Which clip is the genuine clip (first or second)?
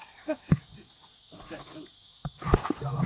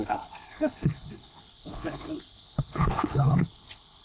first